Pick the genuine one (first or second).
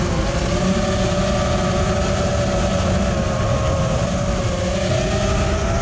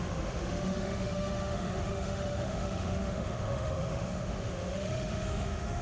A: first